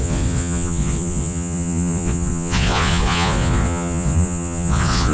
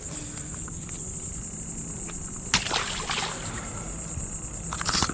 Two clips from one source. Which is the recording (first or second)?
second